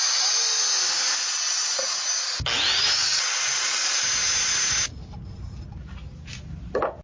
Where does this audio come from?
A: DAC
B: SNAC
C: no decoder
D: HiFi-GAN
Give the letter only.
C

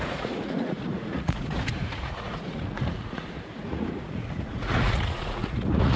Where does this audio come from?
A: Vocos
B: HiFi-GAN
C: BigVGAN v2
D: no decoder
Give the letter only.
A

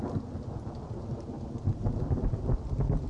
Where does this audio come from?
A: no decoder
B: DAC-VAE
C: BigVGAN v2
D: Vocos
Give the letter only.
A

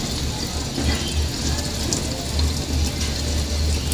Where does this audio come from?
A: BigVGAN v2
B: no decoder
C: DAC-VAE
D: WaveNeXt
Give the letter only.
B